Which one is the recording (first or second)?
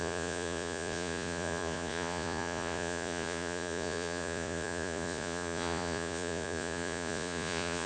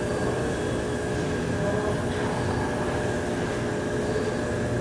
second